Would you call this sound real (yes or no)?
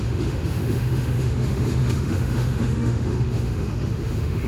no